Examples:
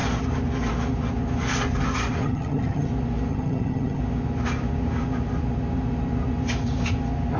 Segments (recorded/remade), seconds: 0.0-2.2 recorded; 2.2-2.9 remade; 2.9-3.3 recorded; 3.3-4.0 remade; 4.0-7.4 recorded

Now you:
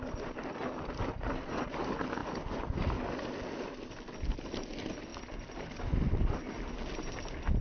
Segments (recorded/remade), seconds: 0.0-7.6 recorded

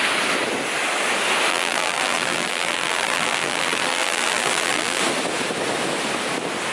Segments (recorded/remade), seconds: 0.0-1.5 recorded; 1.5-5.0 remade; 5.0-6.7 recorded

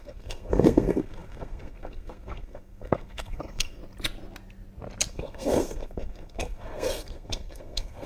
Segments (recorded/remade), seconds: 0.0-3.8 remade; 3.8-5.1 recorded; 5.1-8.1 remade

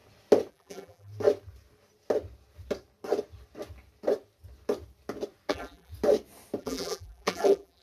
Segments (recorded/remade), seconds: 0.0-0.5 recorded; 0.5-1.1 remade; 1.1-5.5 recorded; 5.5-5.9 remade; 5.9-6.6 recorded; 6.6-7.8 remade